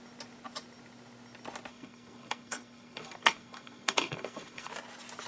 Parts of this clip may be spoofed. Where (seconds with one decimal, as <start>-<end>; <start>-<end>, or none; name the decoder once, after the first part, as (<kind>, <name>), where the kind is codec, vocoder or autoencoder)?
1.7-4.7 (codec, SNAC)